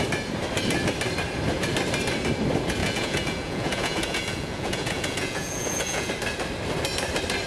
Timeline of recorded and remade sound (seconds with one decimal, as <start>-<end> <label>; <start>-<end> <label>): 0.0-2.8 recorded; 2.8-6.1 remade; 6.1-7.5 recorded